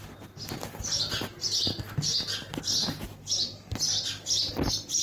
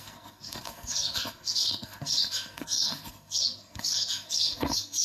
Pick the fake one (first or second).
second